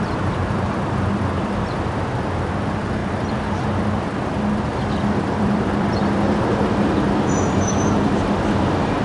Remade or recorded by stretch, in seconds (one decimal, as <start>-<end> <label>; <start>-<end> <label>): 0.0-4.7 remade; 4.7-5.3 recorded; 5.3-6.0 remade; 6.0-6.6 recorded; 6.6-9.0 remade